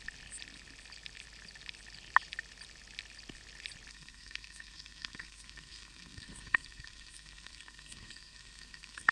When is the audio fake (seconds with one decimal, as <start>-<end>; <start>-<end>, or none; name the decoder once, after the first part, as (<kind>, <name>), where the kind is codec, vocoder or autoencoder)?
3.9-9.1 (codec, SNAC)